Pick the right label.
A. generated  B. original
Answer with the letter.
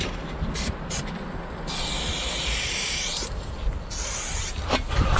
B